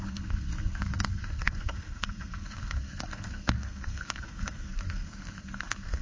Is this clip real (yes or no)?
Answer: no